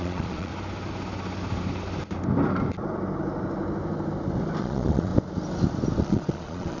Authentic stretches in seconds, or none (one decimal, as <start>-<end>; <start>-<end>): 0.5-4.6; 5.1-6.0